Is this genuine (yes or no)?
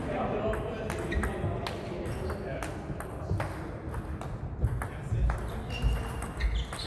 yes